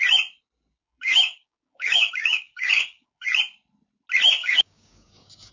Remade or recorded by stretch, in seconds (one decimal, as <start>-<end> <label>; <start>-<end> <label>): 0.0-0.8 recorded; 0.8-3.4 remade; 3.4-4.4 recorded; 4.4-5.5 remade